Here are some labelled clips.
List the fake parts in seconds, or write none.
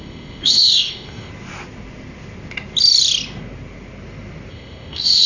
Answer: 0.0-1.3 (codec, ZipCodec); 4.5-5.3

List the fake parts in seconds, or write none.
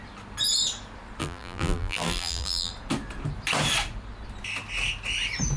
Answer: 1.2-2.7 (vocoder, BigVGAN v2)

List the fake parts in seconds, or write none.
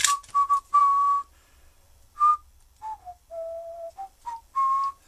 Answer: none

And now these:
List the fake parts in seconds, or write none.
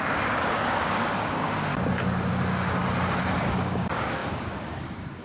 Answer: 0.0-1.7 (codec, DAC); 2.3-2.8; 3.4-5.2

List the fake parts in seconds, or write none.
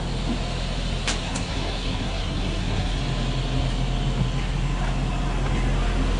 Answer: 1.2-3.0 (codec, SNAC)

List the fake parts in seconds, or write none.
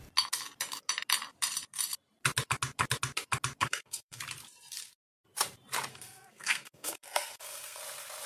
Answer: 3.6-4.2 (codec, SNAC); 5.9-7.8